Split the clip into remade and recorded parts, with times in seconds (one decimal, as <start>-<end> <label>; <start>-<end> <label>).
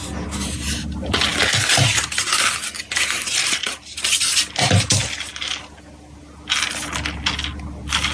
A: 0.0-8.1 recorded